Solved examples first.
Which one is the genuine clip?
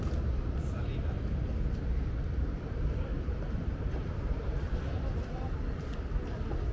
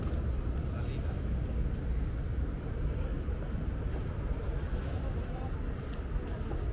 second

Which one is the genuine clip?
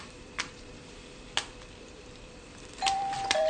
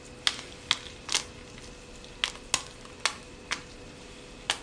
second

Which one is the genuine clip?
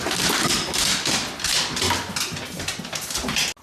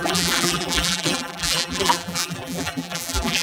first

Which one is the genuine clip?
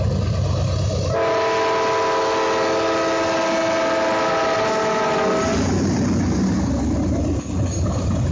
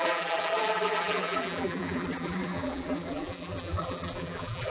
first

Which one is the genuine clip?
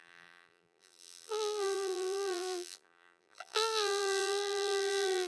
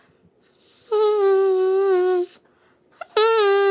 second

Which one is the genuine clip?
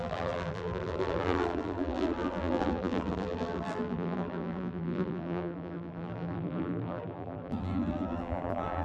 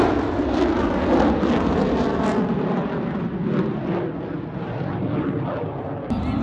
second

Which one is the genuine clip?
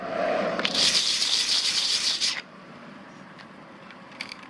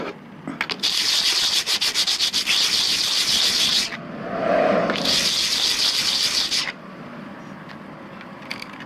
second